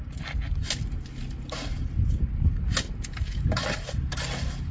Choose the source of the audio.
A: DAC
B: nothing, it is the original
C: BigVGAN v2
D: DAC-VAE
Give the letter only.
B